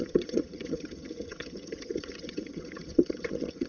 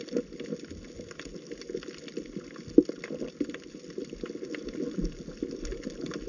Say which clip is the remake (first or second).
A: first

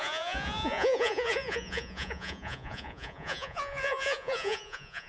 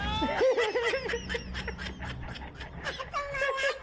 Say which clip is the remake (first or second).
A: first